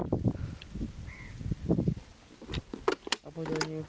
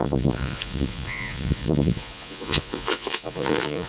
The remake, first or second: second